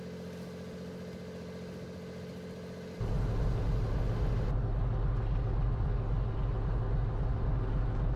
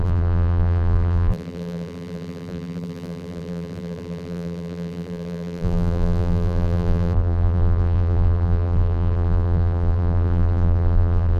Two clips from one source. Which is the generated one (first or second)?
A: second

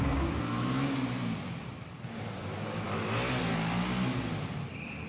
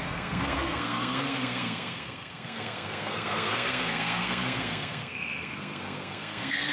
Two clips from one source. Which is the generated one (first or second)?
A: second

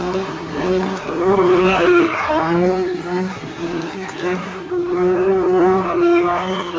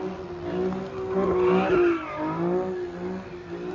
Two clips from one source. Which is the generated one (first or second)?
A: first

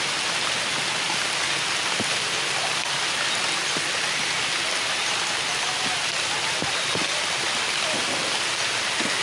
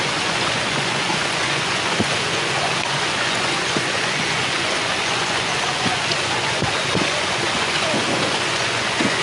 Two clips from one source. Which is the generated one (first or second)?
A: second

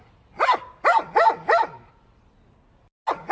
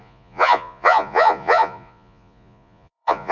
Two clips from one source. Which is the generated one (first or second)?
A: second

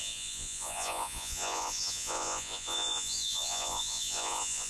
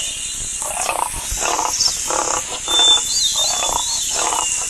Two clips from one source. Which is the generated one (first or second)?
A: first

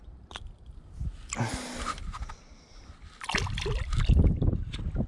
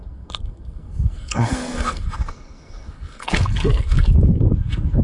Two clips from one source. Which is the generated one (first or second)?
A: second